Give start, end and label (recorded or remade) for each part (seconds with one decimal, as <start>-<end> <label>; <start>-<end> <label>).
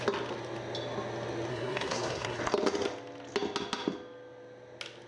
0.0-1.5 recorded; 1.5-2.4 remade; 2.4-5.1 recorded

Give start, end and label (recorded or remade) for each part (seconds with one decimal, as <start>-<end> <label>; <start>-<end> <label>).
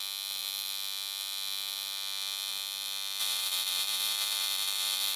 0.0-3.2 recorded; 3.2-5.2 remade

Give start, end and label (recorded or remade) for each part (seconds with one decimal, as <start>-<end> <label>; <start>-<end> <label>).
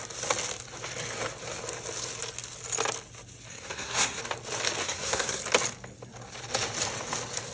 0.0-3.5 recorded; 3.5-4.2 remade; 4.2-4.8 recorded; 4.8-5.4 remade; 5.4-7.5 recorded